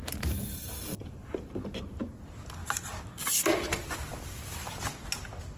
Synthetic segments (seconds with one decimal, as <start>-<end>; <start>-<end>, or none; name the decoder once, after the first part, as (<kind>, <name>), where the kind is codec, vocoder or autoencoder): 0.9-1.8 (vocoder, BigVGAN v2); 2.6-3.1